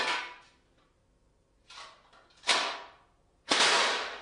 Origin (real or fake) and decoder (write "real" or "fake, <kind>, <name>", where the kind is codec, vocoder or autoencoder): real